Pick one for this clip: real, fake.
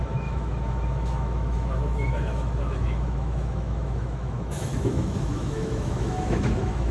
fake